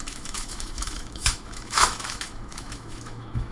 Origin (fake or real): fake